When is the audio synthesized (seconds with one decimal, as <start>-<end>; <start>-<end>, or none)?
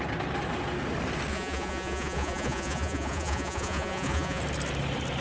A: 1.3-4.4